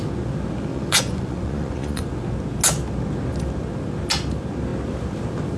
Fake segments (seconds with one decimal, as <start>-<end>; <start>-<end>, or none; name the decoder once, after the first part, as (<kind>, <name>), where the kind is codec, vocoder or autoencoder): 0.7-2.1 (vocoder, Vocos)